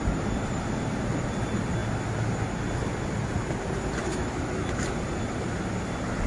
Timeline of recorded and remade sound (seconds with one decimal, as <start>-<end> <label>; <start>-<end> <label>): 0.0-4.0 recorded; 4.0-4.8 remade; 4.8-6.3 recorded